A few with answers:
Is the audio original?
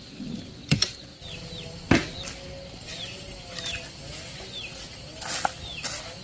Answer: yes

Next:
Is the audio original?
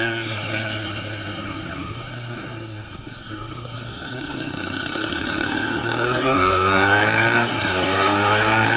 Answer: no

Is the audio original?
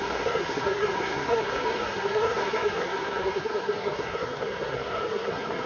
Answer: no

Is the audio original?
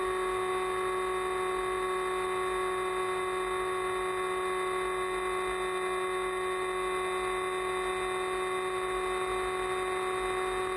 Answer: yes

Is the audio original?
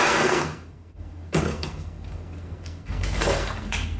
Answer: no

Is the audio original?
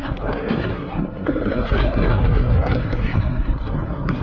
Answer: no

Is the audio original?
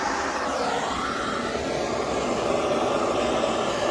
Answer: yes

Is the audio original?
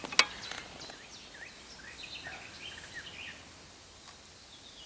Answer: yes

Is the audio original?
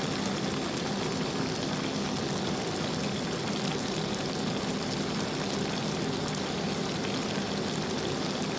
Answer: yes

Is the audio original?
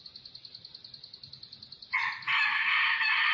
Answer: yes